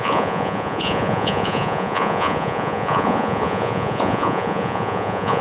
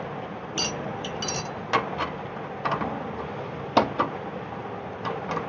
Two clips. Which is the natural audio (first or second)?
second